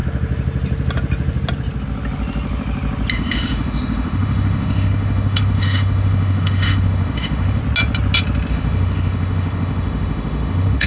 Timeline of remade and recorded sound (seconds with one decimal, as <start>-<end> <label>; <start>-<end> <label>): 0.0-3.1 recorded; 3.1-7.6 remade; 7.6-8.5 recorded; 8.5-10.9 remade

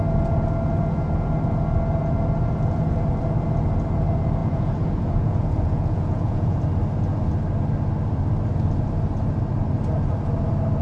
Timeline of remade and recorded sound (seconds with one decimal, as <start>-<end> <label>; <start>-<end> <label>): 0.0-4.4 recorded; 4.4-6.6 remade; 6.6-10.8 recorded

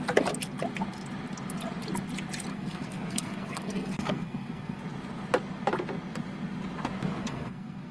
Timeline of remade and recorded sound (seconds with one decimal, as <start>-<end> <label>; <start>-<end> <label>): 0.0-2.5 recorded; 2.5-4.8 remade; 4.8-7.2 recorded; 7.2-7.9 remade